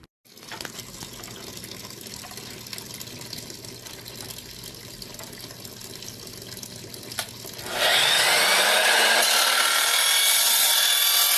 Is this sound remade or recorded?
recorded